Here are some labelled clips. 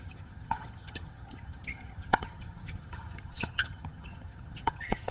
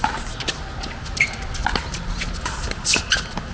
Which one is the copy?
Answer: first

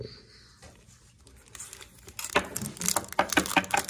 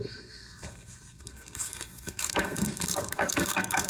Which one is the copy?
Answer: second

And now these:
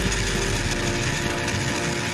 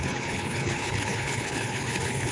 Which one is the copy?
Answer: second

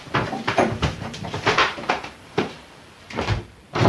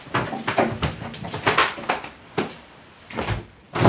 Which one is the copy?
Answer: first